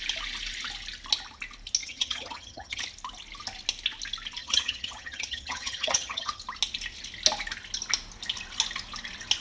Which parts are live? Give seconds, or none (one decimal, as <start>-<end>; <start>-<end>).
0.0-1.8; 2.8-4.4; 6.4-9.4